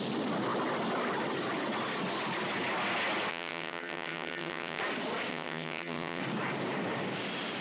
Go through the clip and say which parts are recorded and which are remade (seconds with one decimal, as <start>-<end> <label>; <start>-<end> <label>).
0.0-3.3 recorded; 3.3-4.8 remade; 4.8-5.3 recorded; 5.3-6.2 remade; 6.2-7.6 recorded